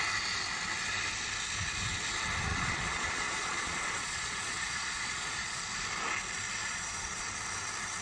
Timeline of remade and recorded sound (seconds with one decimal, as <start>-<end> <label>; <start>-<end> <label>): 0.0-2.5 recorded; 2.5-5.6 remade; 5.6-6.6 recorded; 6.6-7.2 remade; 7.2-8.0 recorded